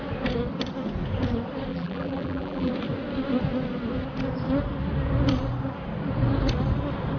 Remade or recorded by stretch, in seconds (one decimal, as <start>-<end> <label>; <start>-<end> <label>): 0.0-1.7 recorded; 1.7-2.7 remade; 2.7-7.2 recorded